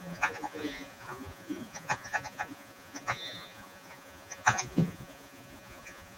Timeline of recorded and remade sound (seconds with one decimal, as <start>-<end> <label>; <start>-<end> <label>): 0.0-6.2 remade